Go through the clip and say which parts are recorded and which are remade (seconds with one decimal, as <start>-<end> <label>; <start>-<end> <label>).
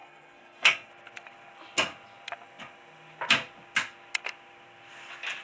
0.0-0.9 remade; 0.9-5.4 recorded